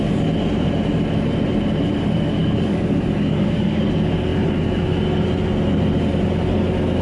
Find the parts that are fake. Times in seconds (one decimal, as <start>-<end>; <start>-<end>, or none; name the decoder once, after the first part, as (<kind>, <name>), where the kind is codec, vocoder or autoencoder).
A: 2.4-3.8 (codec, DAC)